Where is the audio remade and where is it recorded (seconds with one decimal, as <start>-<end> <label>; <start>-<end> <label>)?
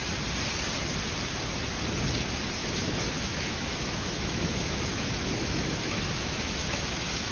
0.0-2.6 recorded; 2.6-7.3 remade